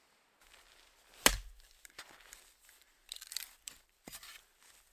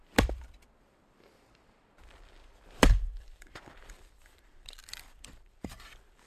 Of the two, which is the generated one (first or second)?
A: second